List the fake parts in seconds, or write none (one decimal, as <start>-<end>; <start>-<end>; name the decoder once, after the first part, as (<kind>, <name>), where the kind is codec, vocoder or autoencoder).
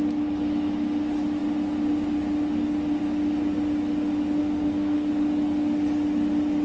4.4-5.1 (codec, SNAC)